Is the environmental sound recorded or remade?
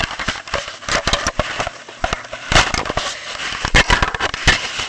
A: recorded